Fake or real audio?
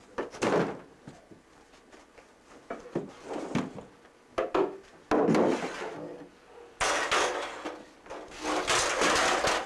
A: real